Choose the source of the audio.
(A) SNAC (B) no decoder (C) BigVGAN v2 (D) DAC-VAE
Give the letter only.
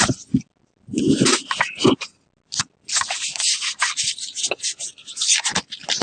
B